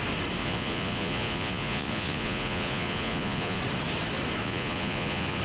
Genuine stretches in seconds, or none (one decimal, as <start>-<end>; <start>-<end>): 0.0-0.4; 3.6-4.4